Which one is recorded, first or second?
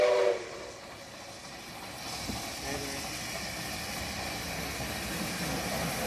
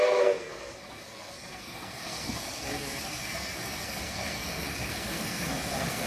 first